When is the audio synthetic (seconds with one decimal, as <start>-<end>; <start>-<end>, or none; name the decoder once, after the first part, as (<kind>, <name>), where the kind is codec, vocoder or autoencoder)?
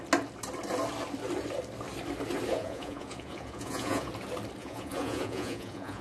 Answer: 2.5-4.1 (vocoder, Vocos); 4.6-6.0